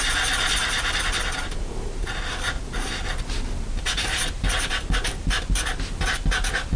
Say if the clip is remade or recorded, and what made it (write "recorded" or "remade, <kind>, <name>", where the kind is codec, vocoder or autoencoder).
recorded